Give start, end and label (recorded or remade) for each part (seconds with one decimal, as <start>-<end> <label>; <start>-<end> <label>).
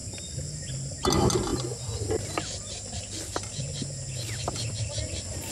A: 0.0-5.5 recorded